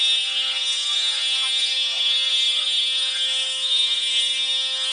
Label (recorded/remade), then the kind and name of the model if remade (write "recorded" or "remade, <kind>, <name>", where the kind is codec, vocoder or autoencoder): remade, codec, SNAC